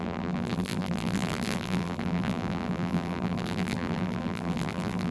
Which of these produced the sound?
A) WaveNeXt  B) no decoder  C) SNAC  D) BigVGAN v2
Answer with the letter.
D